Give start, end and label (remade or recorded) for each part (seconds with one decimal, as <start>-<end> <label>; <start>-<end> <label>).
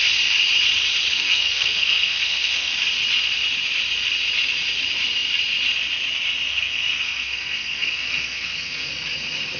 0.0-1.1 recorded; 1.1-2.7 remade; 2.7-6.5 recorded; 6.5-8.9 remade; 8.9-9.6 recorded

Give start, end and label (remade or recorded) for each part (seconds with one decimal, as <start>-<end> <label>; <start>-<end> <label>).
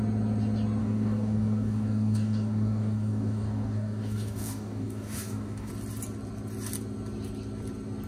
0.0-0.8 recorded; 0.8-5.7 remade; 5.7-8.1 recorded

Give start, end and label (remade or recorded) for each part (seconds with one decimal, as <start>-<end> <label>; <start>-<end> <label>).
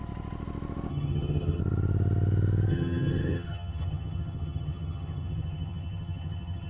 0.0-0.9 recorded; 0.9-1.6 remade; 1.6-2.7 recorded; 2.7-6.7 remade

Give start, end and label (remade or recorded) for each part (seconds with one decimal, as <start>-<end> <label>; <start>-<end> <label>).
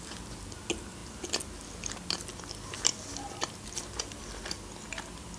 0.0-5.4 recorded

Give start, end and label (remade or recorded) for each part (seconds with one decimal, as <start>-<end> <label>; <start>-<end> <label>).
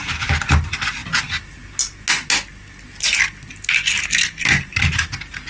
0.0-5.5 recorded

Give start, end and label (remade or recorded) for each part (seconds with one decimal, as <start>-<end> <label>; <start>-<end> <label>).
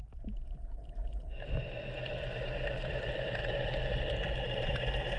0.0-5.2 remade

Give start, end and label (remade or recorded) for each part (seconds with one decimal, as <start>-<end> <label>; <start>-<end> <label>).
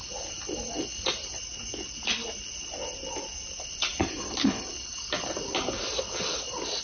0.0-6.8 recorded